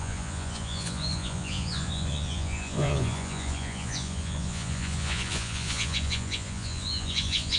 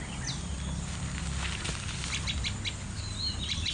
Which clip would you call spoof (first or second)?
first